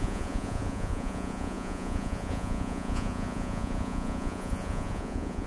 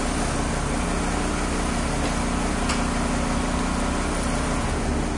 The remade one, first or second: first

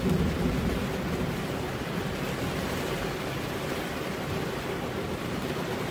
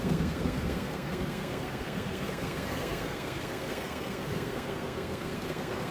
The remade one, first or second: second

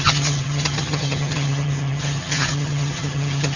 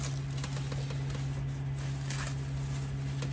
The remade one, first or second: first